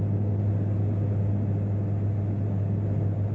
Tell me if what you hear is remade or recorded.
recorded